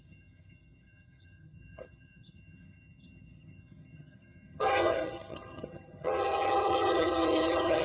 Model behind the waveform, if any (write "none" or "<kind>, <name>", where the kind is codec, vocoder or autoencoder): vocoder, HiFi-GAN